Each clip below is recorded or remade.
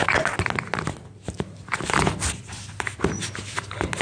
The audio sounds recorded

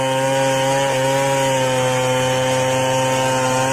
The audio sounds recorded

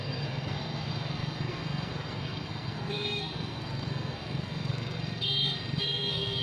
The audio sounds remade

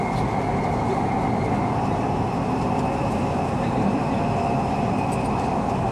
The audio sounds remade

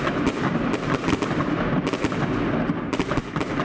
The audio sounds recorded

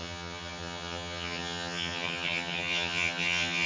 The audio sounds remade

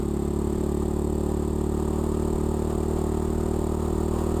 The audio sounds recorded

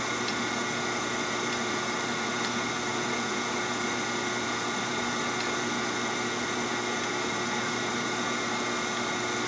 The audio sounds recorded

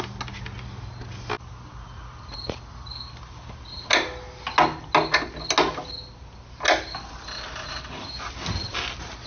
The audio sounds recorded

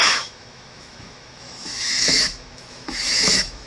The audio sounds remade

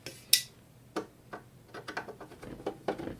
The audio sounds recorded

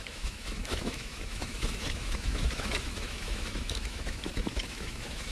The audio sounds remade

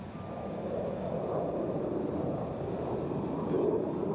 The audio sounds recorded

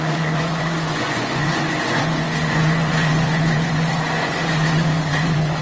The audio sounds remade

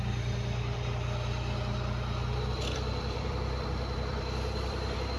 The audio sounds remade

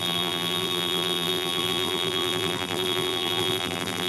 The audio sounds remade